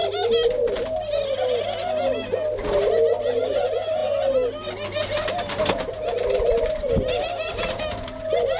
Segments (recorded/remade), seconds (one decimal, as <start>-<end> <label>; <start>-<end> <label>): 0.0-8.6 recorded